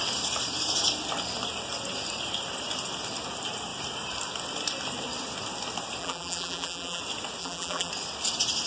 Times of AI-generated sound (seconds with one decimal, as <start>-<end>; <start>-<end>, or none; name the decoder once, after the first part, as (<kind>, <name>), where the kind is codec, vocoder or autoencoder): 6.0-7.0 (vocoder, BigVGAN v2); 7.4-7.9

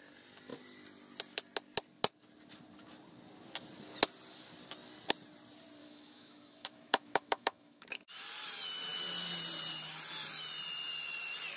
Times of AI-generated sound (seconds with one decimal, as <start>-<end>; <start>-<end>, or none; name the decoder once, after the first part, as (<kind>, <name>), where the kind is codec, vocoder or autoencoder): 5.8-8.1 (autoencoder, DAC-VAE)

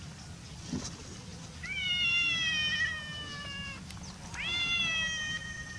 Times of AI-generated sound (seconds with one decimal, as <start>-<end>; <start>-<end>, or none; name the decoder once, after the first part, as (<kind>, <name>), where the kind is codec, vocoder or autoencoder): none

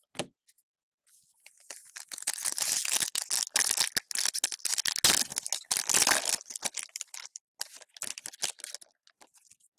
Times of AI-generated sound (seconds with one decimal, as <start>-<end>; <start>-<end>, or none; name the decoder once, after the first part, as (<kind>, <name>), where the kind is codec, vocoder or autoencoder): none